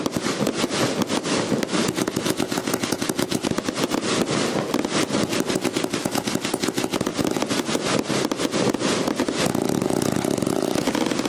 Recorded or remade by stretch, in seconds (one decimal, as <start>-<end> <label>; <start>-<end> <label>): 0.0-11.3 recorded